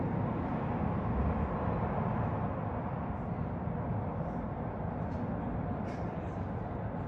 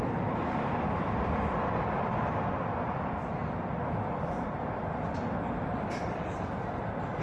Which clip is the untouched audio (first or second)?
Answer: first